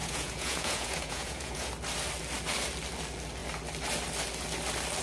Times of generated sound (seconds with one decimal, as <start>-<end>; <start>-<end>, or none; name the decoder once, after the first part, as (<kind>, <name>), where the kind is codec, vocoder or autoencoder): 0.0-1.7 (vocoder, Vocos)